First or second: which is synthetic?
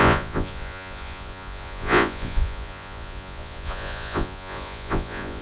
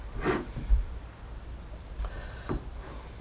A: first